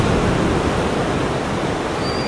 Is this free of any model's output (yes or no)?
yes